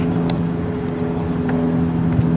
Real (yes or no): yes